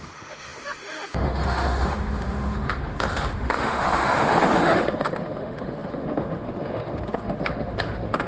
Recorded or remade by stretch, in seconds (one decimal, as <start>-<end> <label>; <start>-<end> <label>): 0.0-8.3 remade